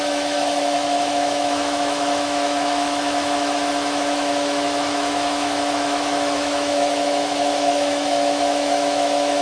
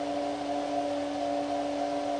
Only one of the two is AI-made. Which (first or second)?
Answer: first